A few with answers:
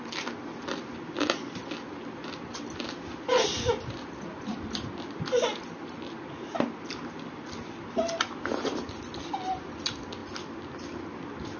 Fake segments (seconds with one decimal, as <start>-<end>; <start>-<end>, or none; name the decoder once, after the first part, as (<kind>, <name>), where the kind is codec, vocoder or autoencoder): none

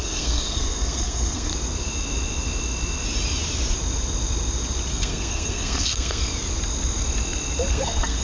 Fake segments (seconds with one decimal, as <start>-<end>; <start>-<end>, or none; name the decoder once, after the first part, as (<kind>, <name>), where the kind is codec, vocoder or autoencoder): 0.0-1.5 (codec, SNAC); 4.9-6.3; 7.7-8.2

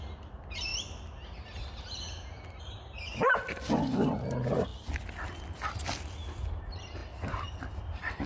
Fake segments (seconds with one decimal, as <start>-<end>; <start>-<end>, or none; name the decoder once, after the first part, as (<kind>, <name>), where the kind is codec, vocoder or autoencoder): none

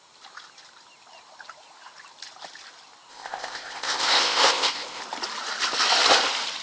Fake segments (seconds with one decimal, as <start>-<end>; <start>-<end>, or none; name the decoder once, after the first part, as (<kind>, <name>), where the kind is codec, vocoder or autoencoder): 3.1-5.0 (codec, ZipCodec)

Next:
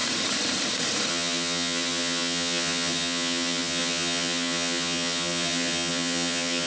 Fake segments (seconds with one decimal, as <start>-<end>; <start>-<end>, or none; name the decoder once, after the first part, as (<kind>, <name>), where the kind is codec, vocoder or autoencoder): 1.1-6.7 (vocoder, HiFi-GAN)

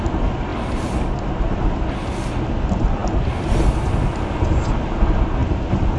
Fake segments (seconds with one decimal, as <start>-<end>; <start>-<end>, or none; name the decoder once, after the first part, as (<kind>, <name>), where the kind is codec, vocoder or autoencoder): none

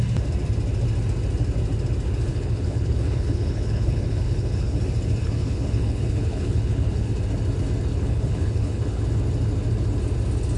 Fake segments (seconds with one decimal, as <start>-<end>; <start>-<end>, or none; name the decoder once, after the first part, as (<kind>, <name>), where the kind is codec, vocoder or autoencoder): 2.3-4.8 (codec, HILCodec); 5.2-7.1; 7.9-9.0

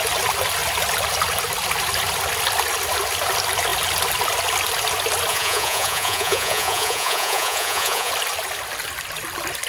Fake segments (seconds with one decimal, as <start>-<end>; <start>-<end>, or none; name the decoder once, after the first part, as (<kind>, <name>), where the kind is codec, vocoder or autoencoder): 5.3-8.1 (vocoder, Vocos)